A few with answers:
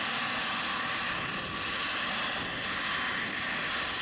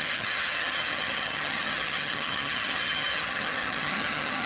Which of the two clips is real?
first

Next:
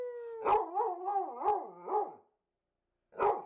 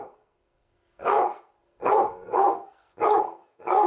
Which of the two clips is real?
first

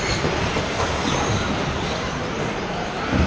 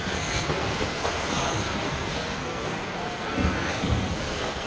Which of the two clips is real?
first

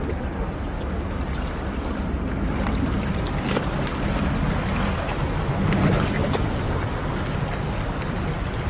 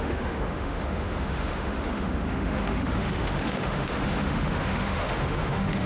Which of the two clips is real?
first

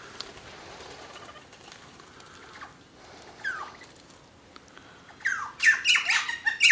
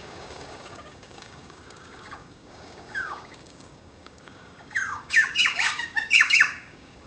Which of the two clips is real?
first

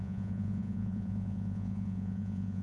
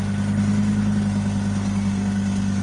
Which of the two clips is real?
second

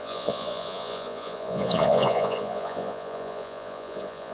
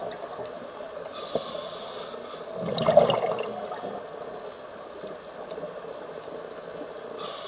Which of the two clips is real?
second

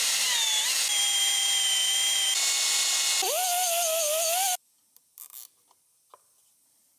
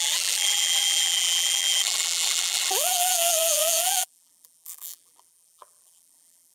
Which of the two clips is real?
first